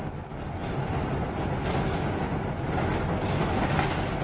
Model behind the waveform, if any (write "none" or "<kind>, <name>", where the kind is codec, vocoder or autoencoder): none